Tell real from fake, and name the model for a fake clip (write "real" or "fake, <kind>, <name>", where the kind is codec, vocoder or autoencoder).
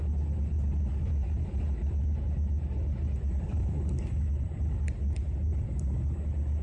real